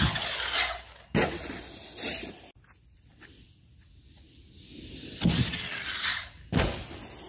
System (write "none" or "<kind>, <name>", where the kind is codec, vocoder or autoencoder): none